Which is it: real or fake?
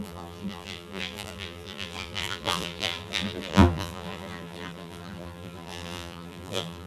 fake